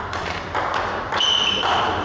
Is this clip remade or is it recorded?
remade